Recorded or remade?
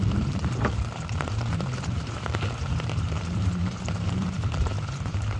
remade